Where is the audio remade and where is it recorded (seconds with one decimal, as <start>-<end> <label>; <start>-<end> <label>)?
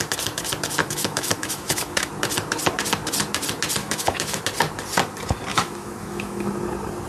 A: 0.0-0.8 recorded; 0.8-2.1 remade; 2.1-3.8 recorded; 3.8-4.4 remade; 4.4-5.5 recorded; 5.5-6.5 remade; 6.5-7.1 recorded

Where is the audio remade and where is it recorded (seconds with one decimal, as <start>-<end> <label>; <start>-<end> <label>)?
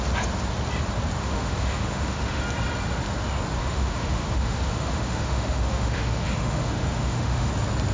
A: 0.0-1.2 recorded; 1.2-2.4 remade; 2.4-3.6 recorded; 3.6-7.5 remade; 7.5-7.9 recorded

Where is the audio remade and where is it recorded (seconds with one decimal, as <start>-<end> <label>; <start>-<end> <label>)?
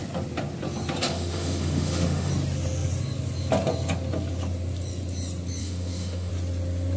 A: 0.0-1.1 recorded; 1.1-2.3 remade; 2.3-5.6 recorded; 5.6-6.3 remade; 6.3-7.0 recorded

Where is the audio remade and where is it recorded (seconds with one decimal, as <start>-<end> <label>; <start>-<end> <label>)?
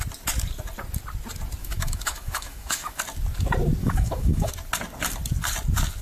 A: 0.0-1.6 recorded; 1.6-3.0 remade; 3.0-3.8 recorded; 3.8-4.5 remade; 4.5-6.0 recorded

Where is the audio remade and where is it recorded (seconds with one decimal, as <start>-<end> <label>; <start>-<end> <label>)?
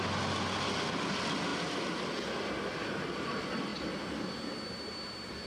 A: 0.0-5.5 recorded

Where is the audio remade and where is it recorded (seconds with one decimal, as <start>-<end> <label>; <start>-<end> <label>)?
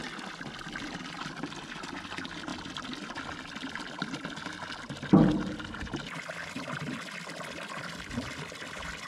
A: 0.0-9.1 recorded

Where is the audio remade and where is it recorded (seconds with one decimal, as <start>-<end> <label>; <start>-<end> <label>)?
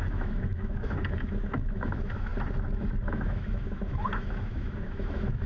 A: 0.0-2.3 remade; 2.3-3.1 recorded; 3.1-5.5 remade